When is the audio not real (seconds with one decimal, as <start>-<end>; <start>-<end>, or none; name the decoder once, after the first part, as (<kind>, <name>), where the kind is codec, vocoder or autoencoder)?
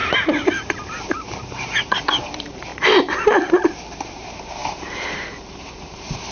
0.0-2.7 (vocoder, BigVGAN v2); 3.9-6.3